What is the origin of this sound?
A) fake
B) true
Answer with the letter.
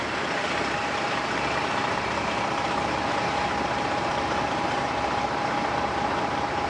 A